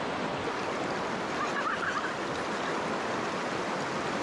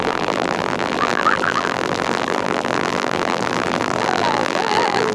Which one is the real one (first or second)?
first